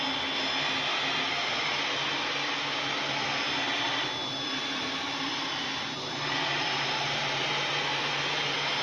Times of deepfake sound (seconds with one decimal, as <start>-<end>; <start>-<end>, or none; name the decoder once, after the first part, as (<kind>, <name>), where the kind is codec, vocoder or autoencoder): 0.9-2.5 (vocoder, BigVGAN v2); 4.2-8.8